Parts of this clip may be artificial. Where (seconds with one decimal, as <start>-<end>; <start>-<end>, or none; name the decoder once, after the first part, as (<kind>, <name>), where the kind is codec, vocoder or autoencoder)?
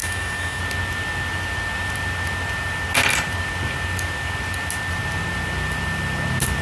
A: 0.0-0.6 (autoencoder, DAC-VAE)